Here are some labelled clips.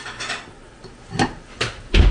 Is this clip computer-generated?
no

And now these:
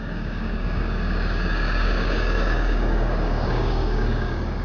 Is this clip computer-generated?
yes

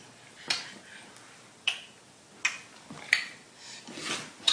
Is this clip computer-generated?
no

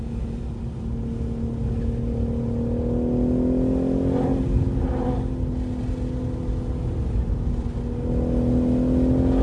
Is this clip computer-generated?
no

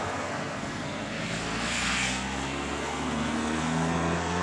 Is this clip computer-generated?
yes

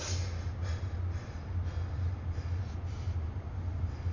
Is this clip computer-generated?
no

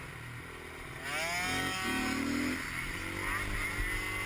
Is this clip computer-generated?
no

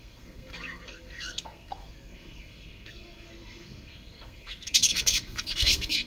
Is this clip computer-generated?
yes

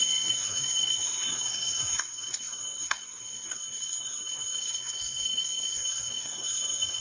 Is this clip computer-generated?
yes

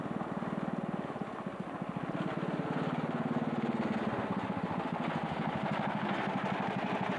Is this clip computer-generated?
no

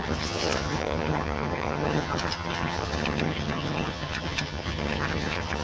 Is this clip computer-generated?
yes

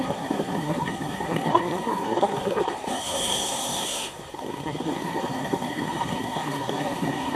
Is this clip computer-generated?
yes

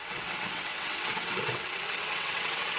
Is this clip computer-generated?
yes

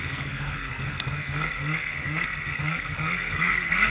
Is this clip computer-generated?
yes